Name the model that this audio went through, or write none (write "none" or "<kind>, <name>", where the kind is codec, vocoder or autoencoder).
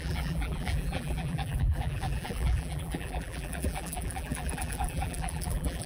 vocoder, BigVGAN v2